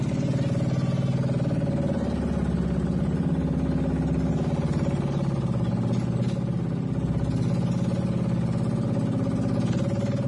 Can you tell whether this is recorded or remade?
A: recorded